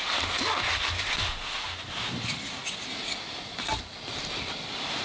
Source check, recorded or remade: remade